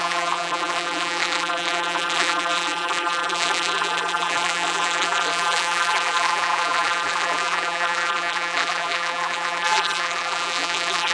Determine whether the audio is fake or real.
fake